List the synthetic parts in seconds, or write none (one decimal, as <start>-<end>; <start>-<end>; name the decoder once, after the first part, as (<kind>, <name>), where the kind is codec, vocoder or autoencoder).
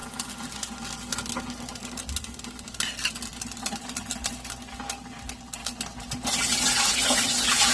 none